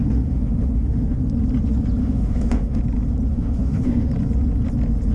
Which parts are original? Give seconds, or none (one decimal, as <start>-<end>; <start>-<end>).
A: 1.2-2.0; 2.8-3.3; 4.1-5.1